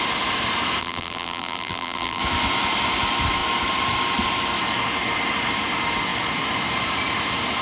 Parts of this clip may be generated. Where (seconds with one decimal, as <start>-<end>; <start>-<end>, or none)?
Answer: 0.8-2.2